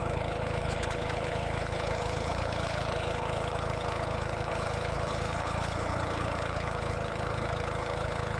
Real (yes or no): no